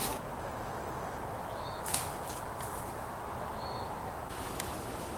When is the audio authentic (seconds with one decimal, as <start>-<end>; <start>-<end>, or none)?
none